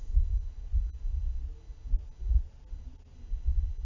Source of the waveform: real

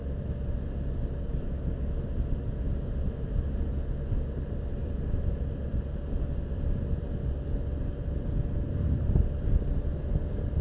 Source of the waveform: real